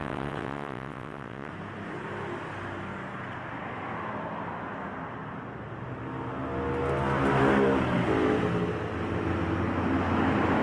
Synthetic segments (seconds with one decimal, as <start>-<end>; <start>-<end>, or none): 0.0-1.5